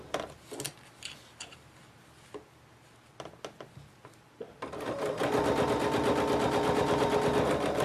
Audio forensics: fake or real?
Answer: real